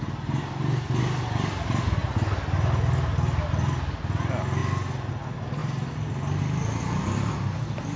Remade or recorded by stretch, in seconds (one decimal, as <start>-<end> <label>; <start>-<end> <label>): 0.0-8.0 recorded

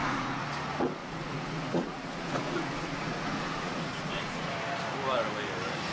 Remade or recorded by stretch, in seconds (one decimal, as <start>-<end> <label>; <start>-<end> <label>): 0.0-0.5 remade; 0.5-1.0 recorded; 1.0-4.5 remade; 4.5-5.9 recorded

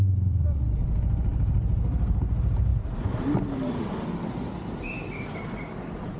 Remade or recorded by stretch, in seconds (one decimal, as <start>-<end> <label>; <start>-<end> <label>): 0.0-2.7 recorded; 2.7-5.7 remade; 5.7-6.2 recorded